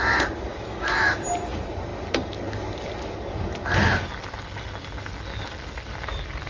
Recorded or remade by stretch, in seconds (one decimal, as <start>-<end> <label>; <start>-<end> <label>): 0.0-0.5 recorded; 0.5-1.1 remade; 1.1-6.5 recorded